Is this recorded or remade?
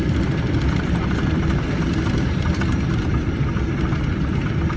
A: recorded